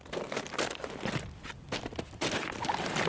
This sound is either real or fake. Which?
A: real